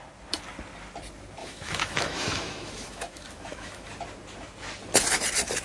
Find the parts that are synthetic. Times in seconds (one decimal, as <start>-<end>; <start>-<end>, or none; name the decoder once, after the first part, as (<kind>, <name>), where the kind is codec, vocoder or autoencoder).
1.4-3.9 (autoencoder, DAC-VAE)